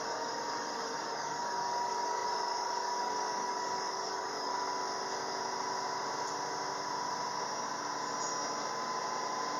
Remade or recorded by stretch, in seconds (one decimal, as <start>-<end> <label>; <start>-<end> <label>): 0.0-4.5 remade; 4.5-9.6 recorded